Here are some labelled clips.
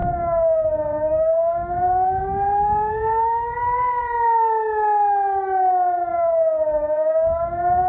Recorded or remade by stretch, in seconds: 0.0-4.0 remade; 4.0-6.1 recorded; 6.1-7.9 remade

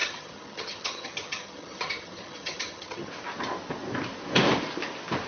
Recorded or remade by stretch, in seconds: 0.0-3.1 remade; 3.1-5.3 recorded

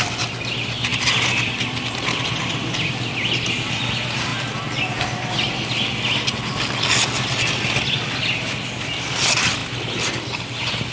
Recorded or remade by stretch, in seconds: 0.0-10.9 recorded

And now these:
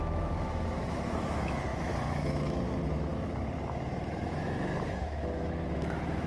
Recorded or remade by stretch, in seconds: 0.0-6.3 remade